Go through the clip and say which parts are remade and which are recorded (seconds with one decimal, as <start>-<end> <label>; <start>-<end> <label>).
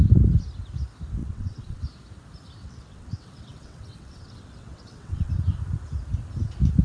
0.0-1.2 recorded; 1.2-1.8 remade; 1.8-2.6 recorded; 2.6-5.3 remade; 5.3-6.8 recorded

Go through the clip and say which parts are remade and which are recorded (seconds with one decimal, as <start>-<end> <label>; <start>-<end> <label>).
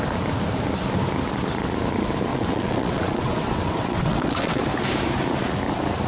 0.0-2.3 recorded; 2.3-4.6 remade; 4.6-6.1 recorded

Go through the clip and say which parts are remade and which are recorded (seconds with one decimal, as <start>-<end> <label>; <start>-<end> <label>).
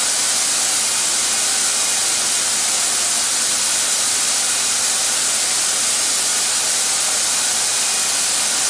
0.0-8.7 recorded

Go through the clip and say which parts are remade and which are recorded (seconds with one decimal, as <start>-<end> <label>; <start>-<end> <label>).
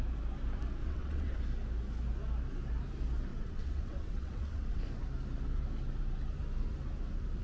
0.0-0.8 recorded; 0.8-1.4 remade; 1.4-3.3 recorded; 3.3-4.8 remade; 4.8-7.4 recorded